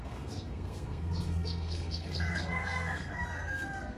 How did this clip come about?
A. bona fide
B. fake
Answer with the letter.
B